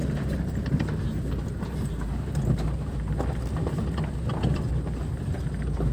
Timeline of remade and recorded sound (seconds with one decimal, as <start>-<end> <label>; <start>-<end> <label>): 0.0-5.9 recorded